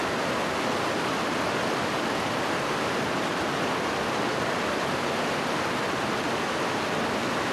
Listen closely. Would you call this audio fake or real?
real